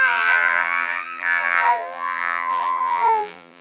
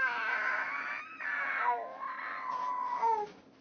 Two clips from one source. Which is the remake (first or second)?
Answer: first